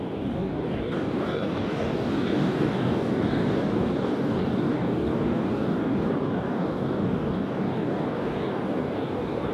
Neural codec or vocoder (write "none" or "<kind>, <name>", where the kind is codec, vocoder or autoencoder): codec, DAC